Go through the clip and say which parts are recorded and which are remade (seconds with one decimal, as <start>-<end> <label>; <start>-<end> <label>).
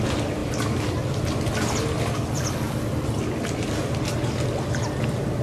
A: 0.0-5.4 recorded